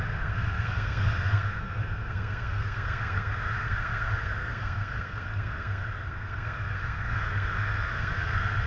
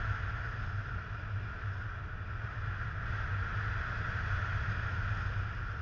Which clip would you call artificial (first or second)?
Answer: first